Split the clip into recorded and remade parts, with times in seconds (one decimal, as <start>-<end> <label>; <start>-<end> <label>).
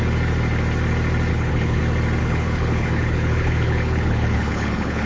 0.0-1.3 recorded; 1.3-1.8 remade; 1.8-2.2 recorded; 2.2-5.1 remade